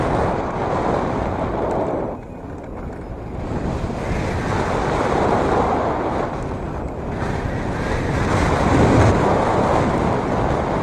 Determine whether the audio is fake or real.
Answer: real